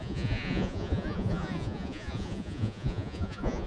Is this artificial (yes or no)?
yes